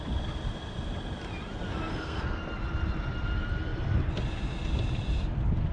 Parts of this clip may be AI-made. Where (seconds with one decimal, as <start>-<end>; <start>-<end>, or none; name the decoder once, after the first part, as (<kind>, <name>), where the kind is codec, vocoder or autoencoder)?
1.9-2.4 (codec, SNAC)